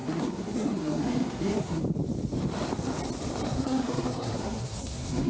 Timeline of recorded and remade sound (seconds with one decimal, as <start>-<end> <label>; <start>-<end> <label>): 0.0-1.8 remade; 1.8-3.5 recorded; 3.5-5.3 remade